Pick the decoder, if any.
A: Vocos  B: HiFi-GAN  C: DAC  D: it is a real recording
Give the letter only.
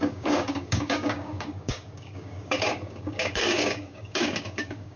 C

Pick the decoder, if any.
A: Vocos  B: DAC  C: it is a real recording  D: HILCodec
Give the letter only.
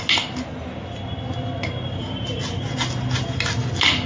C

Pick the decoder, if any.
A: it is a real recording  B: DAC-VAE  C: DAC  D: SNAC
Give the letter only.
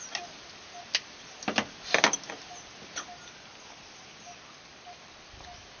A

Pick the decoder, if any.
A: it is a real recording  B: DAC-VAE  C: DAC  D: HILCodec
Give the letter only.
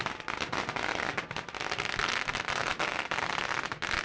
A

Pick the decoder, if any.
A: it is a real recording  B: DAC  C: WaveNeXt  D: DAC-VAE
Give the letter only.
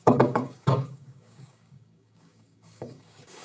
B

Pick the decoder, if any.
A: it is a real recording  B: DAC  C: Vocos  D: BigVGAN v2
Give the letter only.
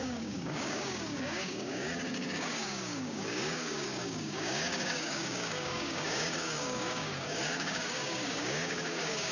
B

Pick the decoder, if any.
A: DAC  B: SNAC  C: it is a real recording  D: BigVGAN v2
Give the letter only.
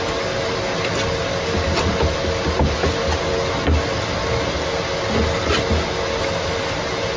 C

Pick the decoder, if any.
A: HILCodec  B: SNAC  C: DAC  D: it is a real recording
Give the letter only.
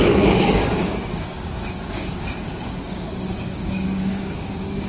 C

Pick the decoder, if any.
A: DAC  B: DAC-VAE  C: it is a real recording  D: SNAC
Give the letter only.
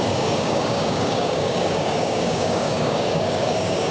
A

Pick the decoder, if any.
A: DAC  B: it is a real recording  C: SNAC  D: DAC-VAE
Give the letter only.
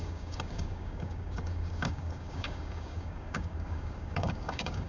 A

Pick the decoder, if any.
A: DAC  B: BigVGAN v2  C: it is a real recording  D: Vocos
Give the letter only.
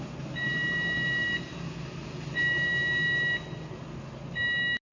C